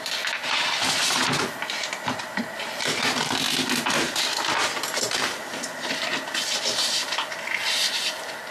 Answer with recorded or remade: recorded